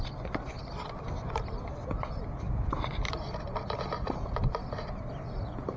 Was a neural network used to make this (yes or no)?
no